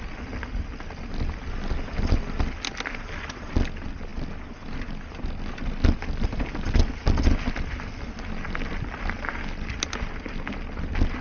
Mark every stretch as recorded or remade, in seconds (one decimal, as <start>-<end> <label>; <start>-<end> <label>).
0.0-11.2 recorded